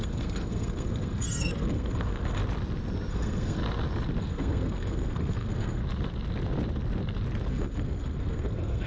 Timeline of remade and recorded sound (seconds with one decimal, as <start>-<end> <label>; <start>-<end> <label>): 0.0-2.4 remade; 2.4-3.1 recorded; 3.1-3.6 remade; 3.6-4.2 recorded; 4.2-5.8 remade; 5.8-7.5 recorded; 7.5-8.9 remade